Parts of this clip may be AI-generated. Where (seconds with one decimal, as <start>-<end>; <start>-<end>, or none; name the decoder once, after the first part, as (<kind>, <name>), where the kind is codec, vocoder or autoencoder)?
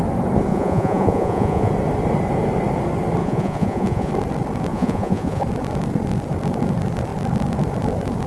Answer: 0.5-1.7 (vocoder, Vocos); 3.2-4.1; 4.7-5.4